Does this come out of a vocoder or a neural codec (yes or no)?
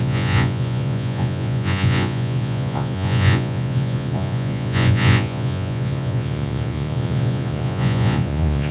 yes